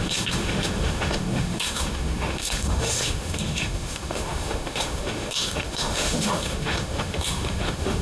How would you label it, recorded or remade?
remade